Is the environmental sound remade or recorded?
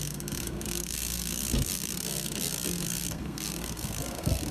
remade